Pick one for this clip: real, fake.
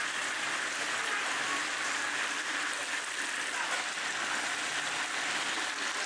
real